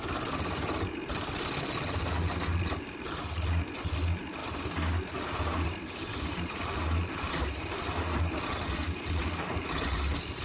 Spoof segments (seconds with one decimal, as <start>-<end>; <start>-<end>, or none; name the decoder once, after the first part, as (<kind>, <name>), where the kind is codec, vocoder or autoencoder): none